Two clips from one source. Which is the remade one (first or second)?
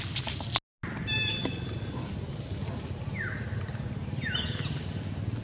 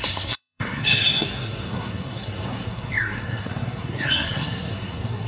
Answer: second